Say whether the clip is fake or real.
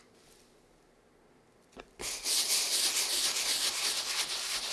real